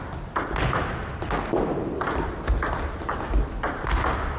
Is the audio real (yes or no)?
yes